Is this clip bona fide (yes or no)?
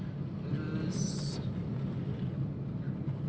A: yes